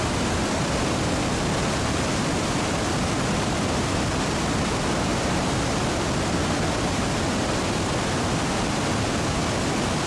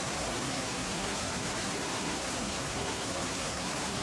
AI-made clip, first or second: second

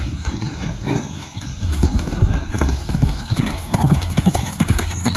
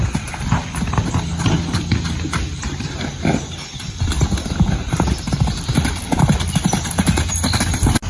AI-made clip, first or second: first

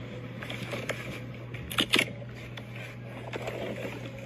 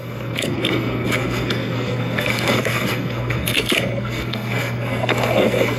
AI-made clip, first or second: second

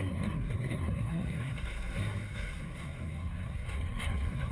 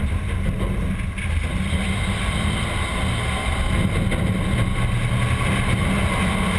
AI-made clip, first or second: first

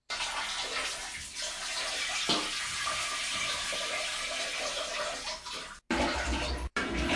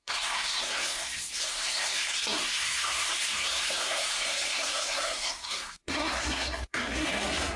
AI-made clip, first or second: second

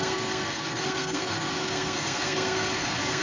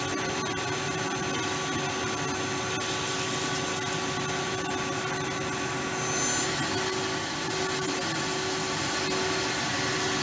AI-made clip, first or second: first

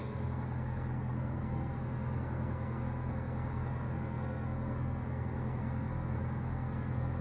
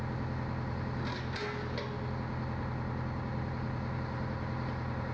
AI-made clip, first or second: first